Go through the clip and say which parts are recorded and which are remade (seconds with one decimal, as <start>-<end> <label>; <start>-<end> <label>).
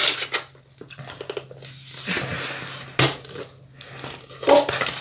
0.0-5.0 recorded